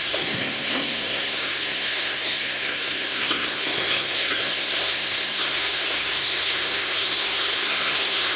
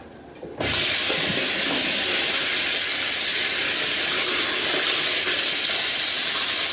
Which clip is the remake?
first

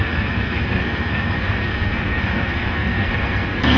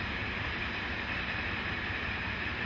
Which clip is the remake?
first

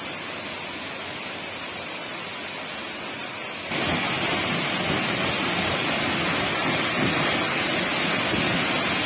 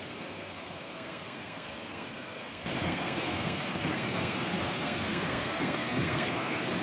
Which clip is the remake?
second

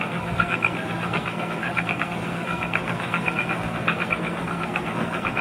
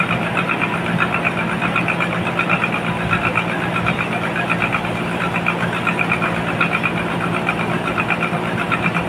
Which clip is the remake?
first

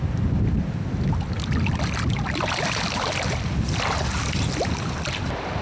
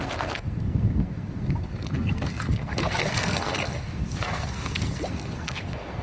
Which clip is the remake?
second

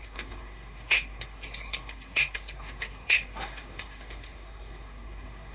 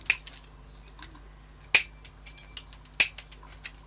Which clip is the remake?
first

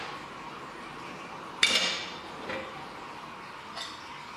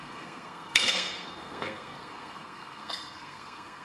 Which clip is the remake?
second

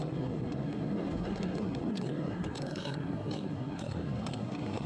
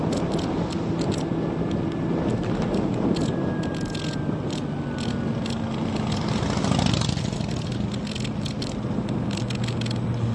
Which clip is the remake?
first